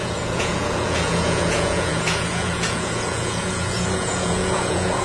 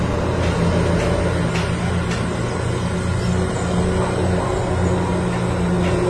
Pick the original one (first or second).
second